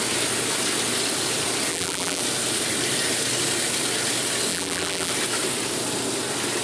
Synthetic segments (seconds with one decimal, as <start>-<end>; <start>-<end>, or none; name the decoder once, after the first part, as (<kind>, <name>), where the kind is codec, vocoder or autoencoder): 1.7-2.2 (vocoder, BigVGAN v2); 4.5-5.1